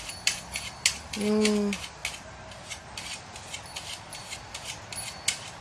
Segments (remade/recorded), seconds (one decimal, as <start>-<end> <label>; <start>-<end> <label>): 0.0-5.6 recorded